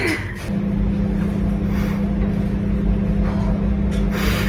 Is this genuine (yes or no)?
yes